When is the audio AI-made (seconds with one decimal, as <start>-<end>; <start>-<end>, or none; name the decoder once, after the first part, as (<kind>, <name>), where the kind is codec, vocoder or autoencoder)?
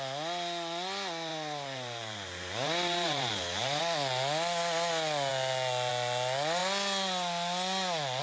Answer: 1.3-3.8 (vocoder, BigVGAN v2)